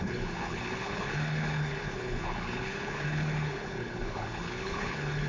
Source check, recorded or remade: remade